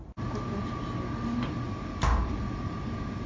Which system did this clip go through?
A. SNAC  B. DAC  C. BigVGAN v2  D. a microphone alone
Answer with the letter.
D